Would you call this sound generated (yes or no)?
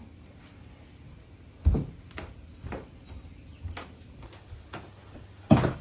no